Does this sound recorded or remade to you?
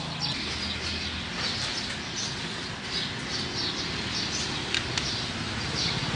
recorded